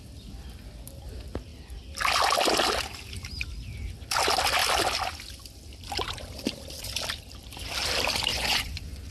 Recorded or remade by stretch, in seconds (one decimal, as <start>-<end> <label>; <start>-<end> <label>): 0.0-8.3 recorded; 8.3-9.1 remade